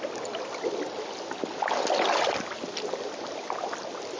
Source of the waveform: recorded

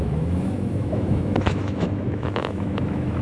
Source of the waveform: remade